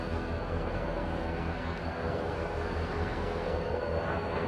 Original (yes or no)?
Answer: no